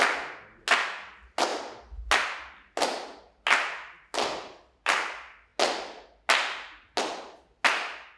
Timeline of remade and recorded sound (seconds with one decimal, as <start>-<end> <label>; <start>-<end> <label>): 0.0-8.2 recorded